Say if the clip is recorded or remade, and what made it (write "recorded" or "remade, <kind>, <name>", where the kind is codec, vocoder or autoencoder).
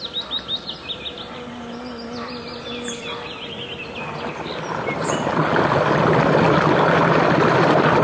recorded